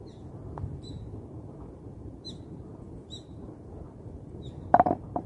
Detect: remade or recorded remade